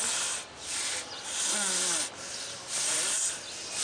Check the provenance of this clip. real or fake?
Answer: real